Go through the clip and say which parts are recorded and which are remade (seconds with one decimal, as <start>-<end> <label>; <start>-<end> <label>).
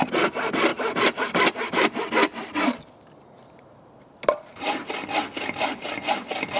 0.0-6.6 recorded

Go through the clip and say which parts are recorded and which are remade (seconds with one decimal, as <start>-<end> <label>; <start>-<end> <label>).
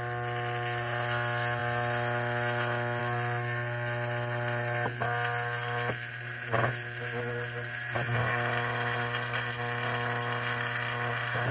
0.0-11.5 recorded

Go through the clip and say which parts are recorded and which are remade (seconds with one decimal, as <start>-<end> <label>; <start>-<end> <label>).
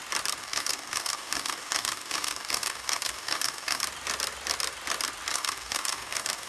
0.0-0.4 recorded; 0.4-3.8 remade; 3.8-5.3 recorded; 5.3-6.5 remade